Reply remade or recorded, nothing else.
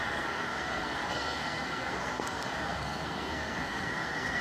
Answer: remade